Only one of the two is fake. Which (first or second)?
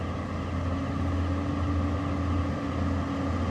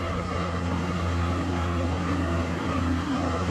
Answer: second